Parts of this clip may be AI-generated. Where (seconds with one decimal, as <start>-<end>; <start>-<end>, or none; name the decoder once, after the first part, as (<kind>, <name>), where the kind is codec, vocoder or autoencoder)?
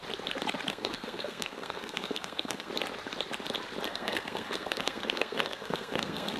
0.7-2.7 (codec, SNAC); 3.9-6.4